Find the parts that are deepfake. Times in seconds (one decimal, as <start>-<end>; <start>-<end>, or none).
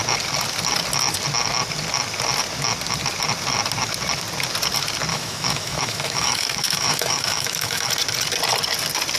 5.1-7.9